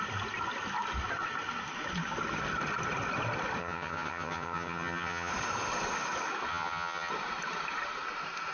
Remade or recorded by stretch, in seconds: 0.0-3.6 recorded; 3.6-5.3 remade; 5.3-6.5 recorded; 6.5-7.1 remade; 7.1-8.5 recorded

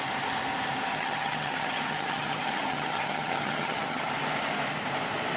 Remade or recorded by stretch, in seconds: 0.0-0.9 recorded; 0.9-4.1 remade; 4.1-5.4 recorded

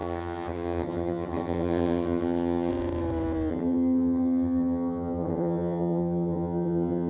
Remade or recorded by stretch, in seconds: 0.0-2.7 remade; 2.7-3.5 recorded; 3.5-7.1 remade